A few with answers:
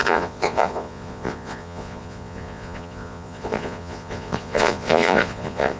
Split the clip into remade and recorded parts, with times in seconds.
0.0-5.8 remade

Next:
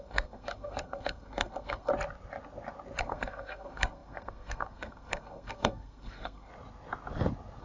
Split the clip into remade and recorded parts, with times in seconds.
0.0-1.9 remade; 1.9-3.0 recorded; 3.0-6.5 remade; 6.5-7.6 recorded

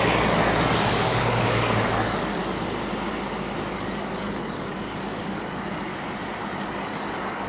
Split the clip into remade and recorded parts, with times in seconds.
0.0-2.4 remade; 2.4-3.7 recorded; 3.7-5.9 remade; 5.9-6.6 recorded; 6.6-7.5 remade